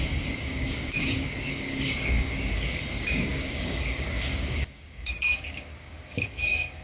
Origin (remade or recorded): remade